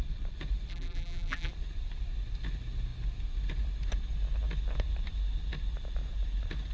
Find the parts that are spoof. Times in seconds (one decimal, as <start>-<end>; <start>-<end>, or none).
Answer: 0.7-1.5